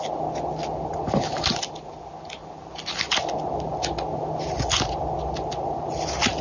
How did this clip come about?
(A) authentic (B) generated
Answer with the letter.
A